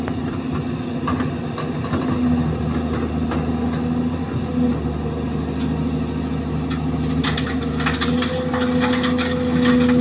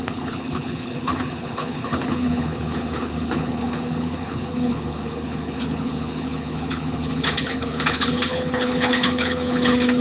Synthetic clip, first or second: second